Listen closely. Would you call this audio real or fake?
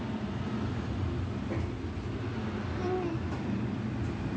real